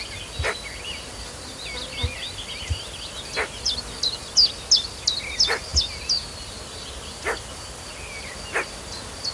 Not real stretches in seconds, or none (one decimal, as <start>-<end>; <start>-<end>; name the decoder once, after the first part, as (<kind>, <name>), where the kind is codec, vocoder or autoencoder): none